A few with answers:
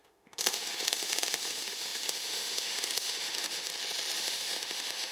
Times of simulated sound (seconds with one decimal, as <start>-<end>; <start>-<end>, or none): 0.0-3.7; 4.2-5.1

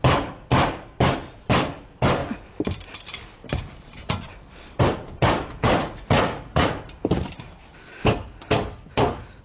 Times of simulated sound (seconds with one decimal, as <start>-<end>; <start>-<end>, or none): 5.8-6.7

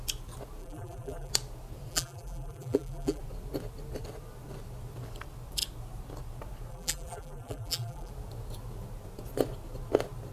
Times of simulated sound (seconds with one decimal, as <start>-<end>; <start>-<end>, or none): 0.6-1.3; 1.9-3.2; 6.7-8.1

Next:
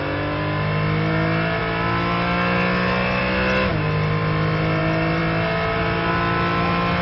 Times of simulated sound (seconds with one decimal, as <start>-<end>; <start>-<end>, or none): none

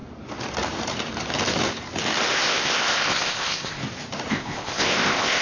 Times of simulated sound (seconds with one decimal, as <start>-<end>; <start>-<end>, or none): 2.3-3.8; 4.3-5.4

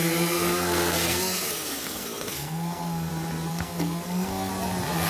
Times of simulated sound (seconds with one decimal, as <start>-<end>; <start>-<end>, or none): 0.0-3.1; 3.5-4.5